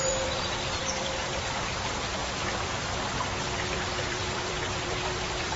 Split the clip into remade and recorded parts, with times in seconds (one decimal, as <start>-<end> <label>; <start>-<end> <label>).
0.0-2.2 remade; 2.2-3.4 recorded; 3.4-5.6 remade